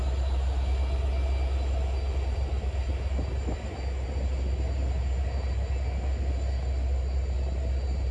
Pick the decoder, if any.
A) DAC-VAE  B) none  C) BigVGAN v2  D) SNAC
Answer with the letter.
B